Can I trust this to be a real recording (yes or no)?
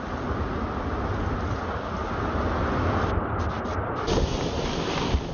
yes